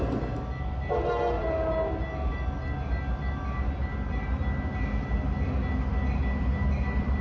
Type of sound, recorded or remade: recorded